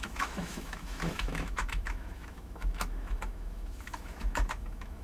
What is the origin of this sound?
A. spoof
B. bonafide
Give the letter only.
A